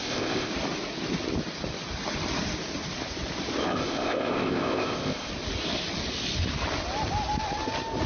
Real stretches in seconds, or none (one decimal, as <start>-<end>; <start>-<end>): 0.5-3.6; 5.3-8.1